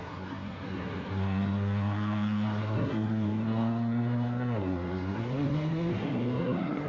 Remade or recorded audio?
remade